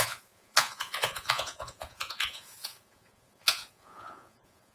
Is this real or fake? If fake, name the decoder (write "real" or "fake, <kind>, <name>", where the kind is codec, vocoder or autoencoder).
fake, vocoder, Vocos